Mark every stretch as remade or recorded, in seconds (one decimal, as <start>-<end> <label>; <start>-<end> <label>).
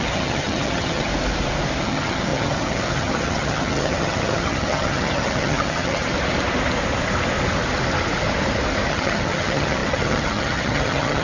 0.0-1.1 remade; 1.1-1.8 recorded; 1.8-6.0 remade; 6.0-8.9 recorded; 8.9-11.2 remade